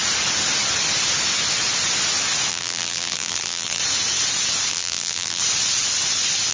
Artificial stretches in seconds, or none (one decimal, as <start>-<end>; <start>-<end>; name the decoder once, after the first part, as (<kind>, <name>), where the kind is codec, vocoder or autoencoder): 2.5-3.8 (vocoder, BigVGAN v2); 4.7-5.4